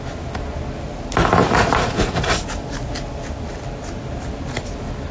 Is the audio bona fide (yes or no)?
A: yes